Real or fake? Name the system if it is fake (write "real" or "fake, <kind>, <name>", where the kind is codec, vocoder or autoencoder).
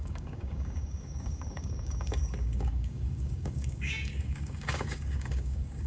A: fake, codec, DAC